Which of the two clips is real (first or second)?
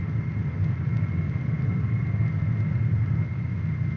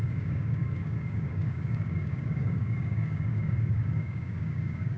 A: first